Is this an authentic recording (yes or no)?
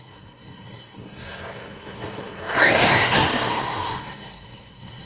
no